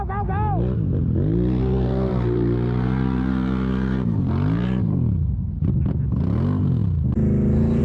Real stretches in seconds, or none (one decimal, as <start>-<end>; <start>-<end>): 0.0-1.6; 5.9-7.8